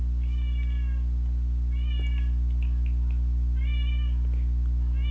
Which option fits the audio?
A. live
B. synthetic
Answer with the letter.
A